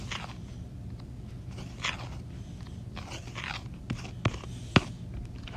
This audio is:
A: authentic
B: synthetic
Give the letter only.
A